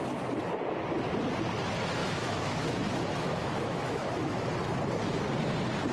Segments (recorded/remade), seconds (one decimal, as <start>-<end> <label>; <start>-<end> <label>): 0.0-2.0 recorded; 2.0-4.4 remade; 4.4-5.9 recorded